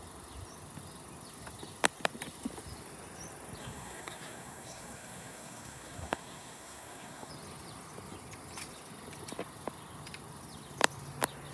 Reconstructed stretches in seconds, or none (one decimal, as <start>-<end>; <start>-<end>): 3.6-7.3